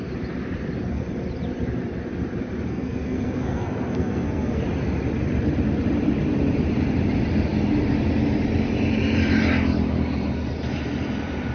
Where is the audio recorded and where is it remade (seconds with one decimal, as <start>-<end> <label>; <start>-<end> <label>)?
0.0-2.7 recorded; 2.7-4.6 remade; 4.6-11.5 recorded